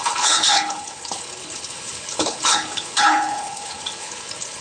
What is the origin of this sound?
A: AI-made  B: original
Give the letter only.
A